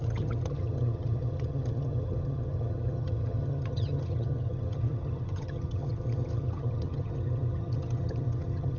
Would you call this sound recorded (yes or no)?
no